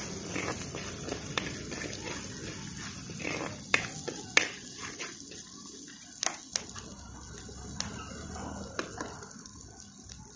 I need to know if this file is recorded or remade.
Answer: recorded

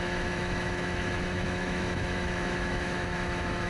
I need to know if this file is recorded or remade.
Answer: remade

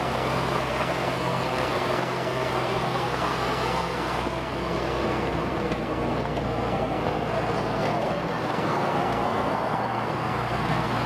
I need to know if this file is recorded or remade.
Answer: remade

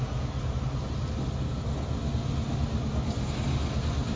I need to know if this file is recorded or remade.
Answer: recorded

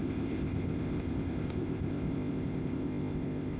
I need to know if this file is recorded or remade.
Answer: remade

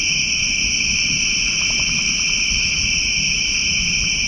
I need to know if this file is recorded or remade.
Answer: recorded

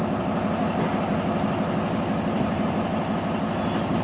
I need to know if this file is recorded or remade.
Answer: recorded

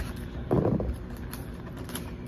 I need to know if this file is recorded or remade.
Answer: remade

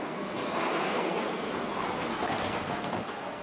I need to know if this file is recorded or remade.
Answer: remade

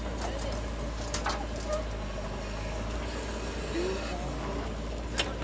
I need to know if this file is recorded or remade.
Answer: recorded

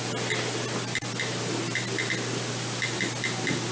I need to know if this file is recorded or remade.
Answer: recorded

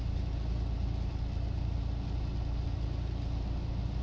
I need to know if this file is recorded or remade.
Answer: recorded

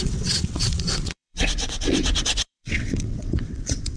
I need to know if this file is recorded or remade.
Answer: remade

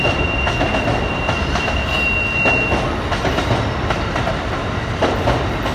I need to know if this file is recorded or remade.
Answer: recorded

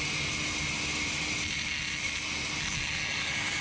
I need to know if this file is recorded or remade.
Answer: recorded